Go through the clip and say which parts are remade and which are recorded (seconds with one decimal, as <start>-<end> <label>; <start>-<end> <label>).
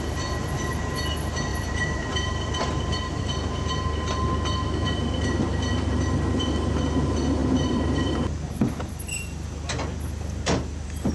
0.0-1.5 recorded; 1.5-3.2 remade; 3.2-7.4 recorded; 7.4-8.3 remade; 8.3-11.1 recorded